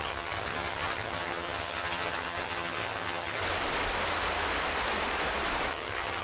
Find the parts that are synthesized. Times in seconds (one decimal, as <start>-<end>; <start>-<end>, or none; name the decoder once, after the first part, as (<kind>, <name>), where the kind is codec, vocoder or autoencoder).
0.0-3.4 (vocoder, HiFi-GAN); 5.7-6.2